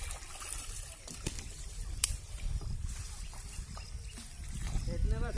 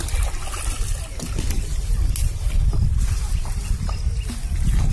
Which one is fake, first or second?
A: first